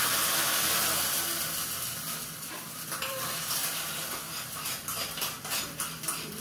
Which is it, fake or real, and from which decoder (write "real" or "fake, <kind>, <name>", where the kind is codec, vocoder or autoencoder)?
fake, vocoder, BigVGAN v2